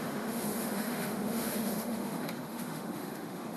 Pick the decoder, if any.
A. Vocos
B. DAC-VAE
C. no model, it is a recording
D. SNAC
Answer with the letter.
B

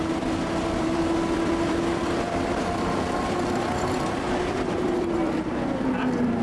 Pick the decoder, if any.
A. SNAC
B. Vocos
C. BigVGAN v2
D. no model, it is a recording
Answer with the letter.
C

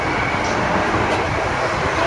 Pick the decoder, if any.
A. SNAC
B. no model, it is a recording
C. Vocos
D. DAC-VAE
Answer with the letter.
B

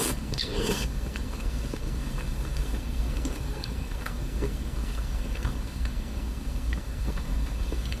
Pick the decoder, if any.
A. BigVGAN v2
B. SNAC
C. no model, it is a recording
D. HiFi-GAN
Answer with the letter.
B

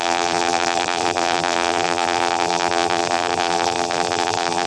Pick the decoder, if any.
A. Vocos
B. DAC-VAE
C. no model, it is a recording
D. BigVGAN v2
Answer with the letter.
D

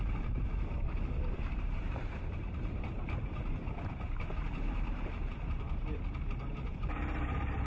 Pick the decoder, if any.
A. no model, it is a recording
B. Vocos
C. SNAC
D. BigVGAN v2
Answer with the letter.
D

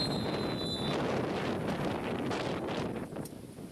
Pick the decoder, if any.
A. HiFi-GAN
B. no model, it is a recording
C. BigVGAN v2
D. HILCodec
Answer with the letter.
B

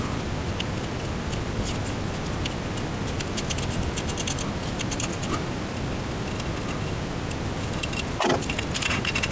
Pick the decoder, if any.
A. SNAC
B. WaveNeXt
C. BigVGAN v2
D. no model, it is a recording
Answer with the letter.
D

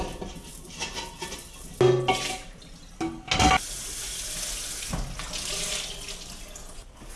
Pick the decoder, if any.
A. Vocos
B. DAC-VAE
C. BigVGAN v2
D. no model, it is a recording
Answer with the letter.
D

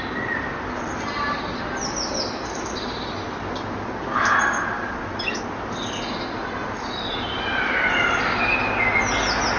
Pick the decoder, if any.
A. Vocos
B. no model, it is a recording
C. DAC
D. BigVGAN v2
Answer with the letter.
B